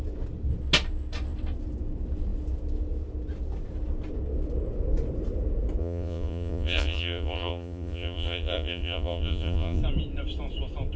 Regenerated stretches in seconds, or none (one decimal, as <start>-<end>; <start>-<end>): 5.8-9.8